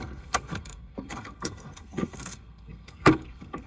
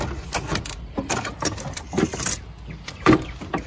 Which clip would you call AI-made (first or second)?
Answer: first